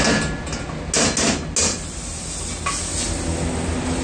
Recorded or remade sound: recorded